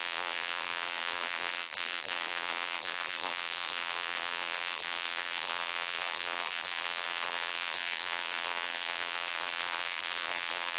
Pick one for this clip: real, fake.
fake